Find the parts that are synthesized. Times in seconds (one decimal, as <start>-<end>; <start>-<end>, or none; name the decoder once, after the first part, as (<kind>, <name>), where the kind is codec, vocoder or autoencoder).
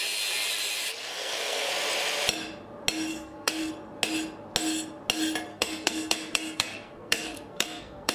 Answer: 1.0-1.7 (codec, SNAC); 3.1-3.7; 5.5-8.1